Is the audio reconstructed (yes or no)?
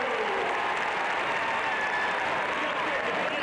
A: no